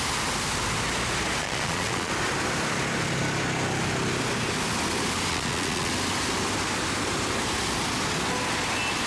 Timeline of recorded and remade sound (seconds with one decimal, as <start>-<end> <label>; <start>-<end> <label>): 0.0-1.4 recorded; 1.4-2.1 remade; 2.1-5.3 recorded; 5.3-5.9 remade; 5.9-9.1 recorded